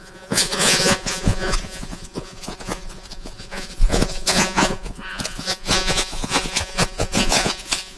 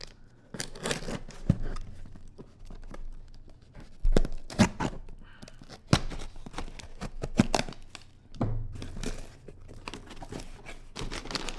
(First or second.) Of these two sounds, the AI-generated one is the first